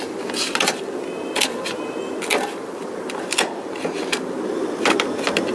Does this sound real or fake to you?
real